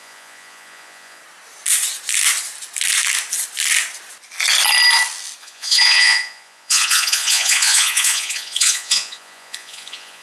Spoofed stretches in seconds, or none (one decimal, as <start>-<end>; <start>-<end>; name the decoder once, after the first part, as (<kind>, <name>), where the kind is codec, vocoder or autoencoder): 0.0-1.2 (vocoder, Vocos); 5.4-10.2